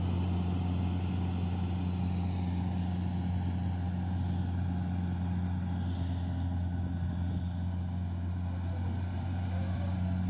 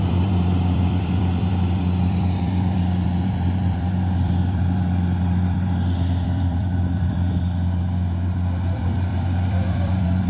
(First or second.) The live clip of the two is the first